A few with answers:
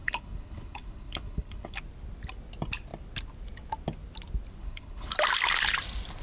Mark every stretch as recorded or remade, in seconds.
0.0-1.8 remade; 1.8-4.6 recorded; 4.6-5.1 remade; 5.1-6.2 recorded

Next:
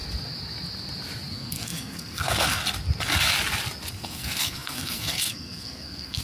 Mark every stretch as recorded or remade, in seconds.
0.0-1.3 recorded; 1.3-2.6 remade; 2.6-3.9 recorded; 3.9-6.2 remade

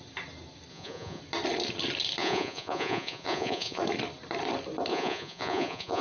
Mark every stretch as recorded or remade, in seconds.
0.0-0.7 recorded; 0.7-1.2 remade; 1.2-2.2 recorded; 2.2-3.8 remade; 3.8-4.9 recorded; 4.9-6.0 remade

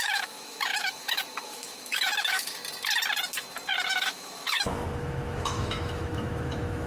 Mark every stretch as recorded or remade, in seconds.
0.0-2.6 remade; 2.6-3.9 recorded; 3.9-6.9 remade

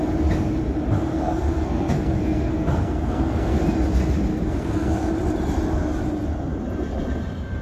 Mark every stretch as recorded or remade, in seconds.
0.0-1.1 recorded; 1.1-3.7 remade; 3.7-4.3 recorded; 4.3-5.1 remade; 5.1-7.6 recorded